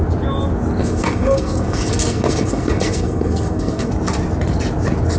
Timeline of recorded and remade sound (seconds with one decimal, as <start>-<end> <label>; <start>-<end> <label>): 0.0-0.8 recorded; 0.8-3.9 remade; 3.9-5.2 recorded